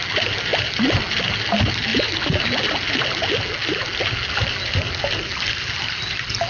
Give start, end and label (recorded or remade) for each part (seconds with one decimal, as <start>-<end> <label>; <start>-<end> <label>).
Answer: 0.0-6.5 recorded